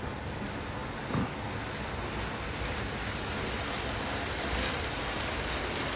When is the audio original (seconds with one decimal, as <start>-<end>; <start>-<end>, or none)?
0.0-6.0